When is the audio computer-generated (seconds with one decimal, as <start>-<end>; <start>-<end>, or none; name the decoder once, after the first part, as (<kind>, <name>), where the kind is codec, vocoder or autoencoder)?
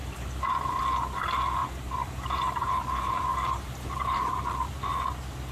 0.0-0.8 (vocoder, BigVGAN v2); 1.6-4.9